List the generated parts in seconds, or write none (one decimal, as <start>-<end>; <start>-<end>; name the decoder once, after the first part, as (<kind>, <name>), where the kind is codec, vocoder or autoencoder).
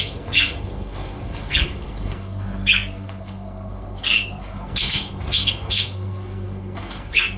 0.0-7.4 (codec, SNAC)